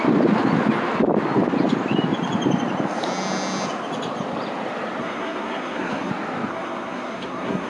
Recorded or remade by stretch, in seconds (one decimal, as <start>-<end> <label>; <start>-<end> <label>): 0.0-5.0 recorded; 5.0-6.1 remade; 6.1-6.5 recorded; 6.5-7.7 remade